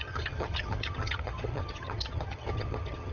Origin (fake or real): fake